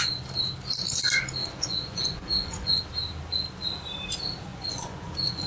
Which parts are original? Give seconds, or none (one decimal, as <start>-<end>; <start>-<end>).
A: 0.0-1.4; 2.8-4.5